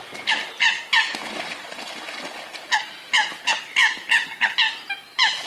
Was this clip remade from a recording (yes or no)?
yes